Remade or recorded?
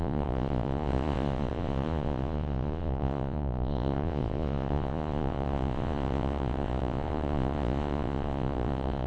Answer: remade